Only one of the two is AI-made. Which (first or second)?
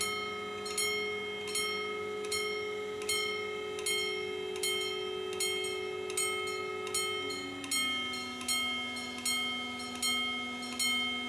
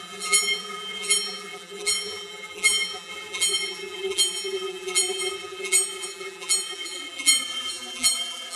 second